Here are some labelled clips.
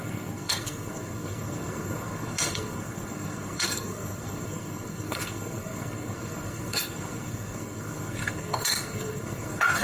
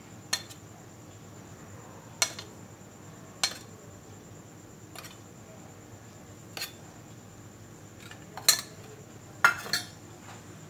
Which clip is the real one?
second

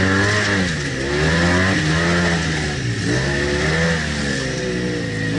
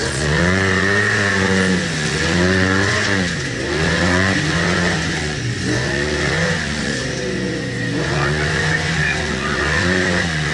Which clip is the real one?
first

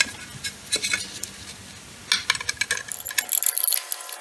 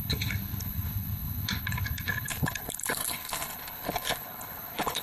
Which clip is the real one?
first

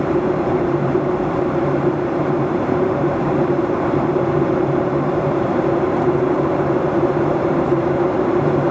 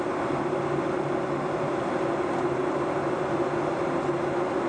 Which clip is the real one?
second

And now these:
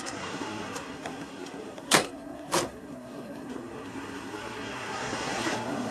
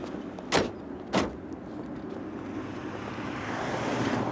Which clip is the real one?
second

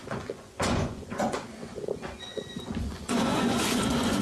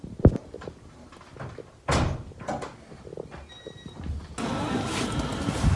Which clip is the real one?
second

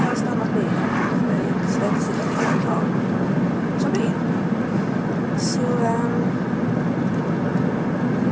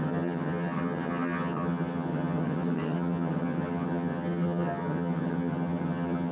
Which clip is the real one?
first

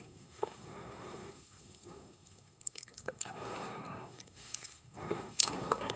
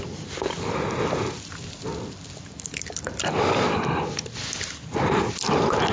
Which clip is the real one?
second